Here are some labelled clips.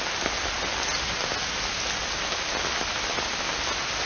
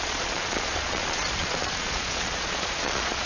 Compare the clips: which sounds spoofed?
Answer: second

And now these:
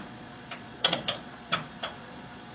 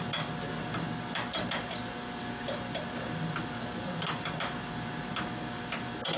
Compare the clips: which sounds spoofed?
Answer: first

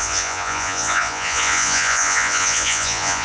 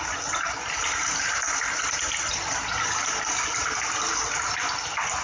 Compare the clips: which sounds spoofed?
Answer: first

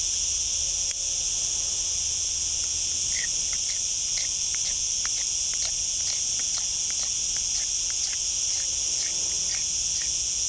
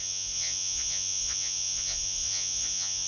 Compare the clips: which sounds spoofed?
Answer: second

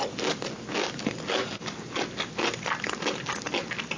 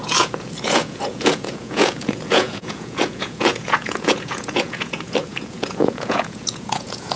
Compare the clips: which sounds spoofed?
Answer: second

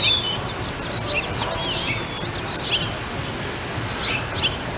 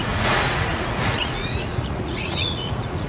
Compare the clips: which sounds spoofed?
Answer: second